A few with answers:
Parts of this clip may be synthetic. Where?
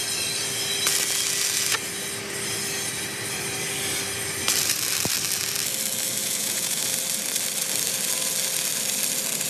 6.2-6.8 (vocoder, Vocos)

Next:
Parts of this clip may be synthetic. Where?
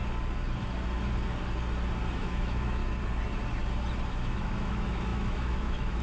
2.1-2.8 (autoencoder, DAC-VAE); 4.1-6.0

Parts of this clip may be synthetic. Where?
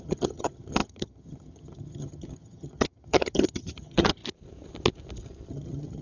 0.0-4.2 (vocoder, HiFi-GAN); 5.5-6.0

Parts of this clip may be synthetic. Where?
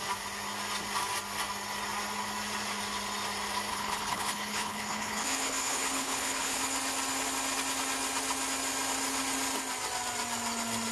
3.7-6.6 (codec, HILCodec)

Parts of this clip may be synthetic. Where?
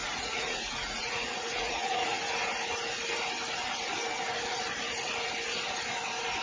0.0-2.2 (vocoder, Vocos)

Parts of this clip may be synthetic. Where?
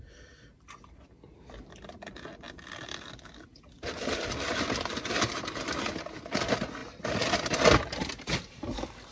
none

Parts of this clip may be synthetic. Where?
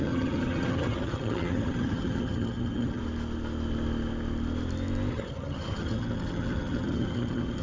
0.0-3.0 (vocoder, HiFi-GAN); 5.1-7.6